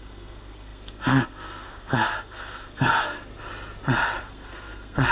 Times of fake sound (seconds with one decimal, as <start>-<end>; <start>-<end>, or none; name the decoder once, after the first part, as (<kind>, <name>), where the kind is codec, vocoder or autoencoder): 0.0-3.3 (codec, SNAC); 4.2-5.1